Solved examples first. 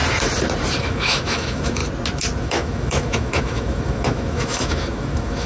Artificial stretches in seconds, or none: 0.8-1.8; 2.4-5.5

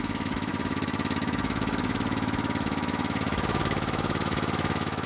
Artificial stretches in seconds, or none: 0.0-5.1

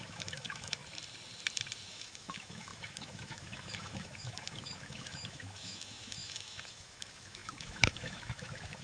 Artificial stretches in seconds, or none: 0.0-0.8; 1.9-8.8

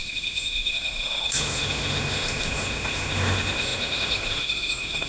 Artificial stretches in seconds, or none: 0.0-5.1

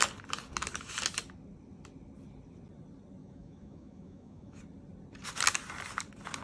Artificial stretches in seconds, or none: 3.2-4.6

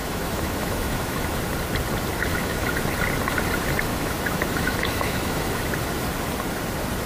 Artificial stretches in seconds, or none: 0.0-1.4; 2.3-2.8; 3.9-5.6